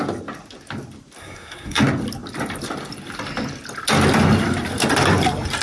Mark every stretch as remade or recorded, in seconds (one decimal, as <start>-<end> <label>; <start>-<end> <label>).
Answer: 0.0-1.2 recorded; 1.2-1.8 remade; 1.8-5.6 recorded